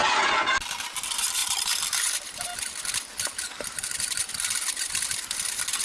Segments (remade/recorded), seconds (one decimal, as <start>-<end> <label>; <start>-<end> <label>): 0.0-5.8 recorded